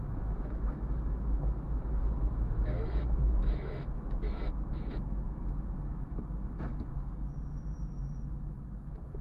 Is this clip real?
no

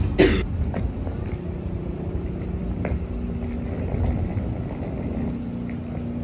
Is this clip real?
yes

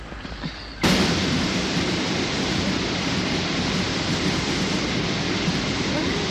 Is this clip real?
no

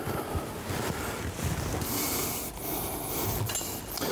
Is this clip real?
yes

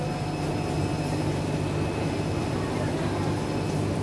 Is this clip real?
yes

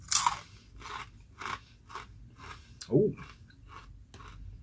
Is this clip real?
yes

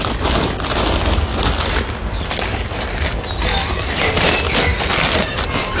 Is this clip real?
yes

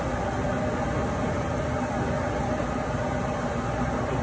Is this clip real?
yes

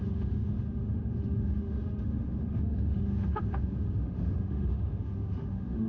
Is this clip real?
no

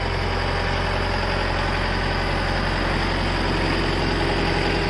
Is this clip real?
yes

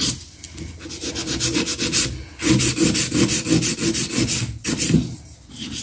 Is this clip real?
yes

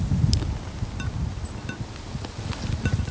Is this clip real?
yes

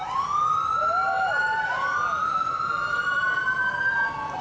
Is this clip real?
yes